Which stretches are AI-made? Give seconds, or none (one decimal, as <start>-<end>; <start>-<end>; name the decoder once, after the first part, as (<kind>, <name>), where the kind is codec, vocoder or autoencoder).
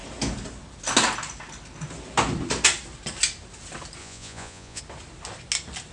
4.0-4.8 (vocoder, Vocos)